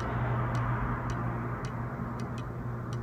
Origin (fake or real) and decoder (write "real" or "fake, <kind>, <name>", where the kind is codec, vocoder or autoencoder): real